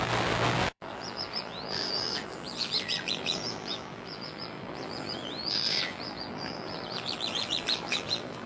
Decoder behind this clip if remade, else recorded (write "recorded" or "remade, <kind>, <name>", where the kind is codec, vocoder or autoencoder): remade, vocoder, BigVGAN v2